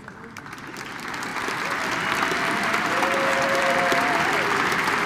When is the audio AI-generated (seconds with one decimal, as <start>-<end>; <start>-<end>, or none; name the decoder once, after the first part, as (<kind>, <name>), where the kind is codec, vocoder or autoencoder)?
none